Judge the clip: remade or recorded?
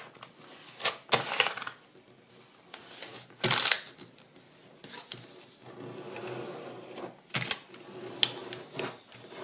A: recorded